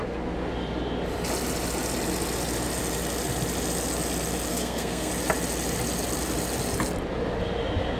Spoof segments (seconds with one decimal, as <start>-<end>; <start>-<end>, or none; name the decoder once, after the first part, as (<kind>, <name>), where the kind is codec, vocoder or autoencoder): 4.5-5.1 (codec, SNAC)